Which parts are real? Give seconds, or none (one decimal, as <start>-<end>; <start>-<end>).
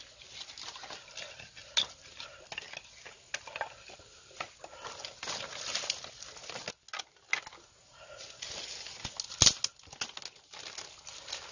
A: 0.0-11.5